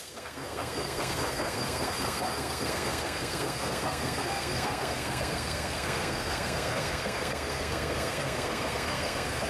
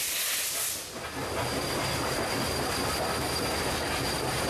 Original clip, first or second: second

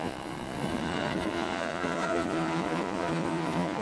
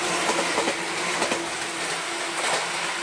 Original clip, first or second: second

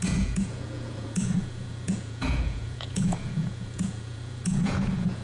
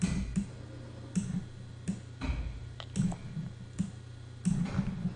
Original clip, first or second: second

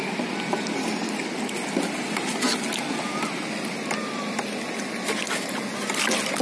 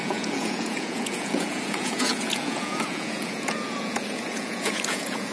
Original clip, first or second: first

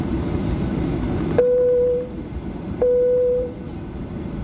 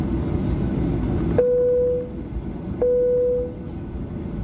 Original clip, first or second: second